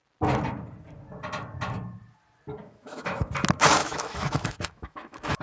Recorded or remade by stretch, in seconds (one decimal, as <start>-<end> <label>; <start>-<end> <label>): 0.0-2.6 recorded; 2.6-3.3 remade; 3.3-3.8 recorded; 3.8-5.4 remade